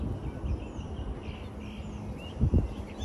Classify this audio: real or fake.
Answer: real